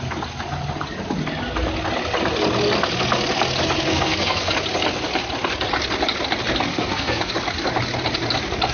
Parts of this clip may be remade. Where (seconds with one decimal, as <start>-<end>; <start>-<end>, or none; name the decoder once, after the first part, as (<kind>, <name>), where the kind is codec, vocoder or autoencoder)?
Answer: 3.9-4.5 (codec, SNAC); 6.7-7.3